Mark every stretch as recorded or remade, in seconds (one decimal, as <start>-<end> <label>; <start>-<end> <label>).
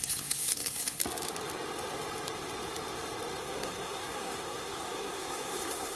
0.0-1.0 remade; 1.0-3.4 recorded; 3.4-6.0 remade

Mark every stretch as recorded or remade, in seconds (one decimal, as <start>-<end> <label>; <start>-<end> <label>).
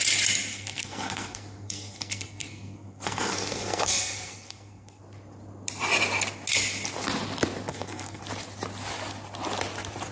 0.0-0.5 recorded; 0.5-5.0 remade; 5.0-7.7 recorded; 7.7-8.2 remade; 8.2-10.1 recorded